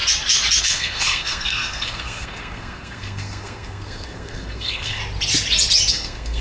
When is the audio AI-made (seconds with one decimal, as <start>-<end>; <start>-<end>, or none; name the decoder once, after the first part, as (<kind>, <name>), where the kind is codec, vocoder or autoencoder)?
0.6-5.0 (codec, SNAC); 5.9-6.4

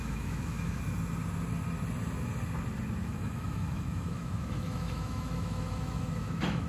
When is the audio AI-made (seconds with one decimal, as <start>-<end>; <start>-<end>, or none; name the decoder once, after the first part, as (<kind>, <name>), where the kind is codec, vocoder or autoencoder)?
0.0-0.8 (autoencoder, DAC-VAE); 3.0-6.7

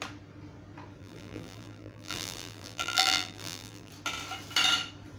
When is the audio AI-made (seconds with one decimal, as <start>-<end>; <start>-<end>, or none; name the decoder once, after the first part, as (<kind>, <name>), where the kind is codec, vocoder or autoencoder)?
1.0-3.9 (vocoder, BigVGAN v2)

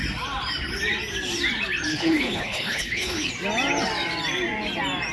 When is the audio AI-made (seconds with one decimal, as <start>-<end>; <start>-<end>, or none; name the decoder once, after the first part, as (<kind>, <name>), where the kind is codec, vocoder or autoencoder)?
1.9-3.3 (codec, HILCodec)

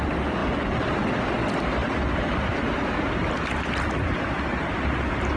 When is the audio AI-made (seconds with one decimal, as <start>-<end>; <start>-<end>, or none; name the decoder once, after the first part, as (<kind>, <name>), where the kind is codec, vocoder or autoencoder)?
none

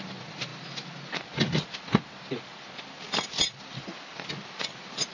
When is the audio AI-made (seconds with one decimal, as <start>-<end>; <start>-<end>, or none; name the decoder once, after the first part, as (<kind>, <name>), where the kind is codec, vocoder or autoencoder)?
none